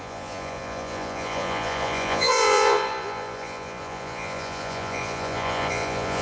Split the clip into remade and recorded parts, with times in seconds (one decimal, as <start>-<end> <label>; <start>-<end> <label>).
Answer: 0.0-6.2 remade